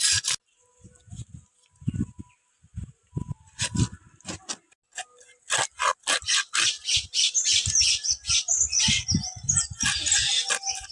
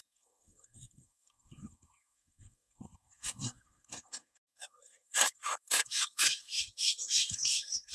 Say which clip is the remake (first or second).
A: second